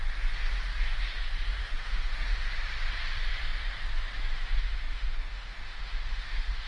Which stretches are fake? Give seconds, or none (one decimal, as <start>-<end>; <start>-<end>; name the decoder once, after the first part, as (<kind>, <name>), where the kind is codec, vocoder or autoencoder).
1.6-2.5 (autoencoder, DAC-VAE); 4.2-6.7